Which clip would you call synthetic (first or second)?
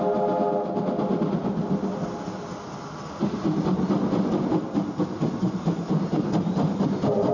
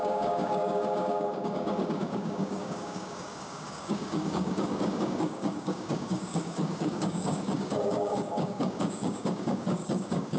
second